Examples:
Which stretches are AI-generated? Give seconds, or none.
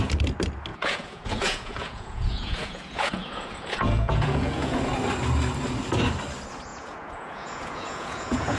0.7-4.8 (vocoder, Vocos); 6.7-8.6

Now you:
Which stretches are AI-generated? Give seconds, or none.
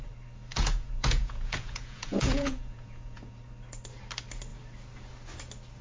0.5-3.4 (vocoder, Vocos)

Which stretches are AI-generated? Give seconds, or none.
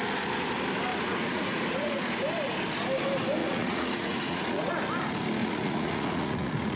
0.9-2.0 (vocoder, Vocos); 3.4-4.7; 5.4-6.8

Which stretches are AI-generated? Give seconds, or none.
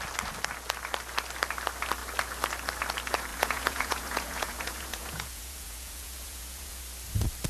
3.3-6.8 (vocoder, Vocos)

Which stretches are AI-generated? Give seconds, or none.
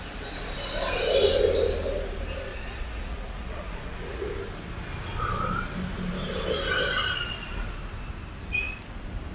2.5-4.3 (vocoder, Vocos)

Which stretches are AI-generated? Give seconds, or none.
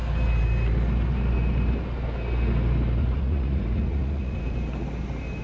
3.0-4.4 (vocoder, Vocos)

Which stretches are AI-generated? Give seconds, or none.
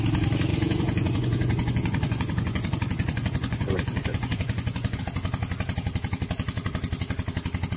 0.5-5.0 (vocoder, Vocos)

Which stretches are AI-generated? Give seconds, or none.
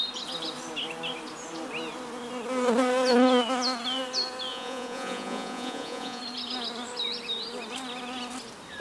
4.5-6.2 (vocoder, Vocos)